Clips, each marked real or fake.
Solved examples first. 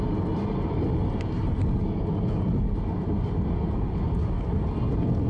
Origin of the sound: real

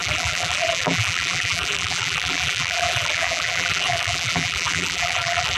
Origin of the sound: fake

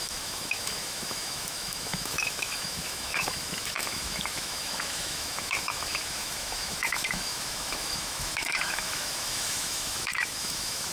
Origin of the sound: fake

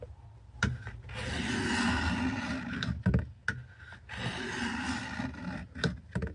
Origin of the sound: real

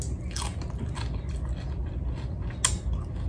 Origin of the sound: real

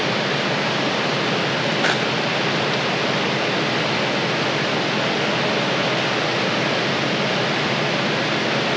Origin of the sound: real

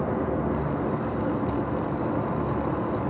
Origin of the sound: real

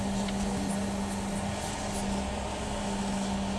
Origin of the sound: real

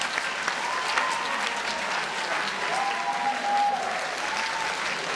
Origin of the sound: real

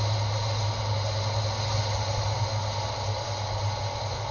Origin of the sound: real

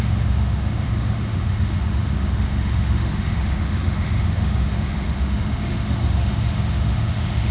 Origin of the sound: fake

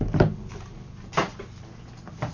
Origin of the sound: real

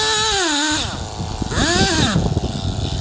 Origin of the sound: real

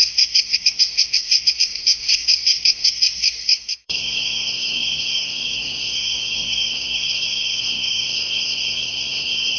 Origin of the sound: fake